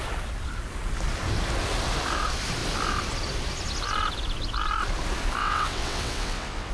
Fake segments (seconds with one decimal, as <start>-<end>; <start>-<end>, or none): 5.4-6.7